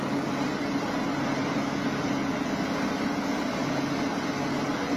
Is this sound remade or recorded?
recorded